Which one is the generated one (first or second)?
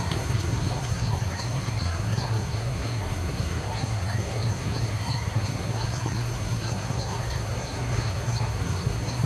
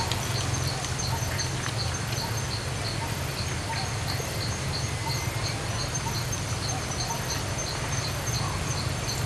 first